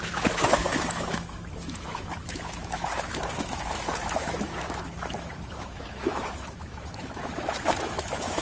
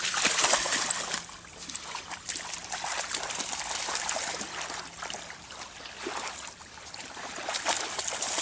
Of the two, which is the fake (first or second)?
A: first